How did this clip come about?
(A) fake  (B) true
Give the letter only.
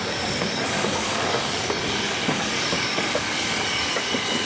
A